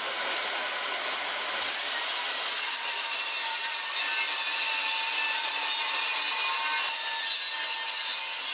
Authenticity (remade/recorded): recorded